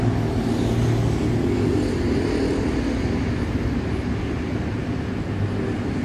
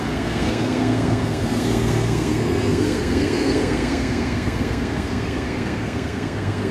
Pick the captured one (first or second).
first